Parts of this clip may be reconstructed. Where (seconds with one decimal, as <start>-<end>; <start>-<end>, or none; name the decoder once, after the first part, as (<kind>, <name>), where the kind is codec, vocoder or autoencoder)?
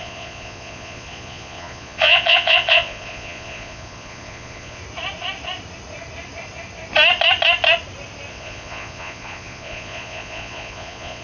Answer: 0.0-4.8 (vocoder, Vocos); 8.3-11.2